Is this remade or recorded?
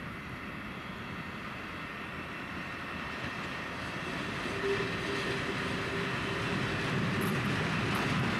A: recorded